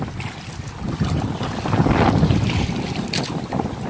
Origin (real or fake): real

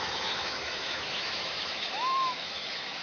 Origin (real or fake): fake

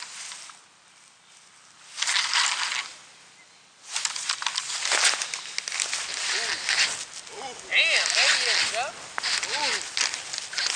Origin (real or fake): real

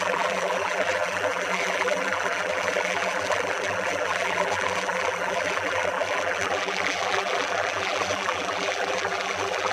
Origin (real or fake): fake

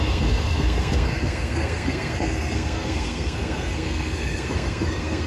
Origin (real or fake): fake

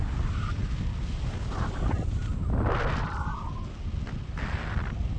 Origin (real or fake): real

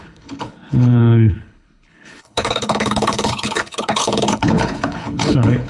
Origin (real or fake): fake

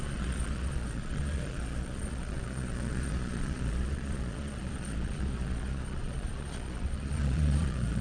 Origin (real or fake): fake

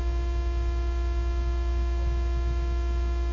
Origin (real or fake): real